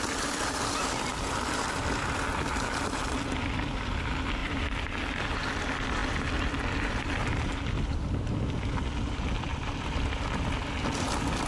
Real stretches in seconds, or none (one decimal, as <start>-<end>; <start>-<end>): 0.0-9.5; 10.6-11.5